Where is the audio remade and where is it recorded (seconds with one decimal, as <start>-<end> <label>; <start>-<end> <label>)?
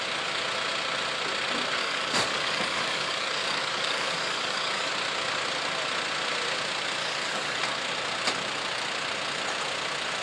0.0-1.8 recorded; 1.8-4.9 remade; 4.9-7.0 recorded; 7.0-7.6 remade; 7.6-10.2 recorded